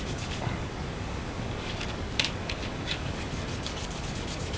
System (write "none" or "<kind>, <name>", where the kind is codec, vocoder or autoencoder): codec, DAC